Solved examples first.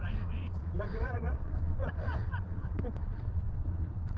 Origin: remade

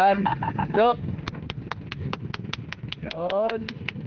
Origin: remade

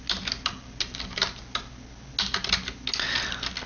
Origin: recorded